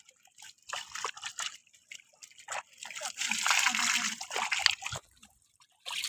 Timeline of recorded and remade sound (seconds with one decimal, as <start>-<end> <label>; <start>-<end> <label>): 0.0-6.1 recorded